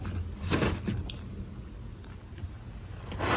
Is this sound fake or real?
real